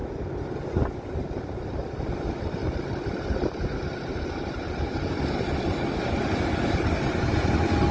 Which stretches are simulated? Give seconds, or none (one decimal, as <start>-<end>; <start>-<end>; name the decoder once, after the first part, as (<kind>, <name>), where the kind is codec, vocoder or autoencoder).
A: none